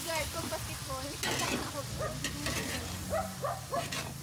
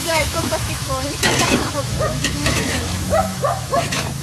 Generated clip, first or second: second